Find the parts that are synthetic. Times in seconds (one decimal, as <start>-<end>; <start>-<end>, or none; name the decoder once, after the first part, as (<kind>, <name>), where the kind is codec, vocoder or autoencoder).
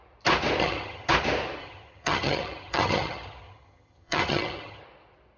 0.6-1.1 (vocoder, HiFi-GAN); 1.6-4.8